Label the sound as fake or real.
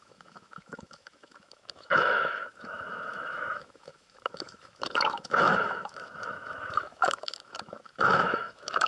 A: fake